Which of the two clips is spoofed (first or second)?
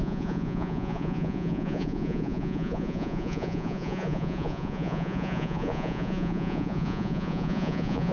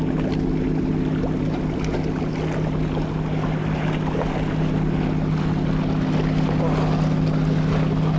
first